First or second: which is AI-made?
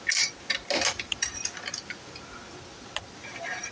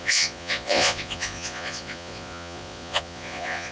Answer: second